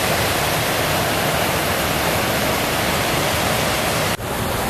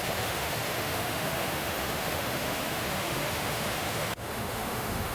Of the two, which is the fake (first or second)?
second